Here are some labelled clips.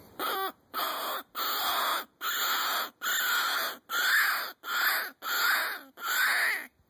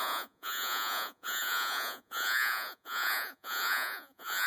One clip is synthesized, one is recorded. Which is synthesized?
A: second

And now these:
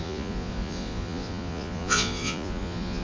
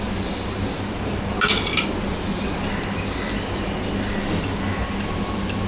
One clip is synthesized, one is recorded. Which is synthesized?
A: first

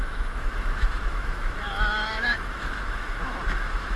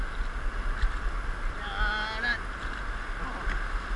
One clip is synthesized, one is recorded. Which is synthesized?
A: first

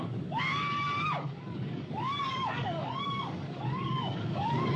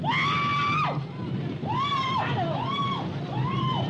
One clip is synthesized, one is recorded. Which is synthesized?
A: first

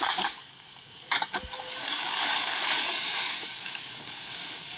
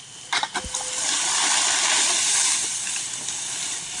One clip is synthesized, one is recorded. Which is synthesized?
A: first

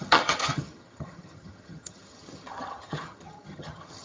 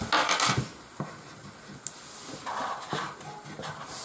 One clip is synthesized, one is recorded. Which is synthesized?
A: first